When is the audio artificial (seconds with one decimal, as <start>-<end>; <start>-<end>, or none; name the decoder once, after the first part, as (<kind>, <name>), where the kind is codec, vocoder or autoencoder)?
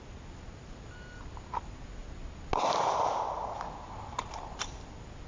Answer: none